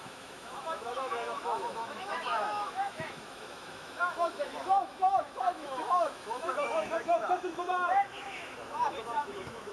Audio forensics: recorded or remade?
remade